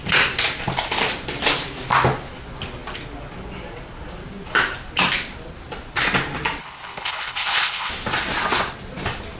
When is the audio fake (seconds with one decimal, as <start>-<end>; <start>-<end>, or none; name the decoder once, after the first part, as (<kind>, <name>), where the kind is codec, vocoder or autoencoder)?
6.6-7.9 (codec, HILCodec)